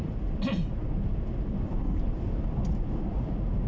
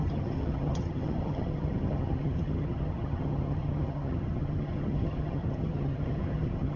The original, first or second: first